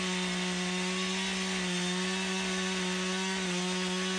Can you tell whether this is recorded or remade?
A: recorded